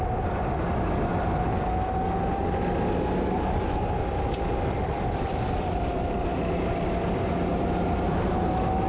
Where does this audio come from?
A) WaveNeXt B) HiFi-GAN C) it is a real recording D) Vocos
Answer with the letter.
C